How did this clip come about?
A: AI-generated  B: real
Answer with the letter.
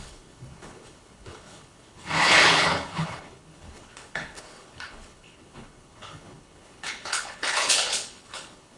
A